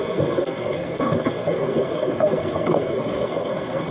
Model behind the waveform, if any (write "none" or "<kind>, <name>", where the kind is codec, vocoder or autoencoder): codec, SNAC